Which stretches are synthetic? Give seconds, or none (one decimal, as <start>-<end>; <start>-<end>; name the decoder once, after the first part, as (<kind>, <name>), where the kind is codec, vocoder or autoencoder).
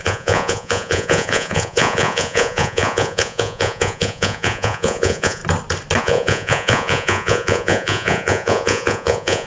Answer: 0.0-5.4 (vocoder, Vocos); 6.0-9.5